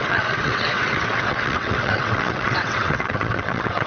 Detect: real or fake fake